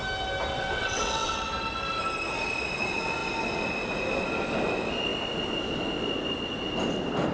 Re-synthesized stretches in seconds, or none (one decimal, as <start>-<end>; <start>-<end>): 0.5-1.5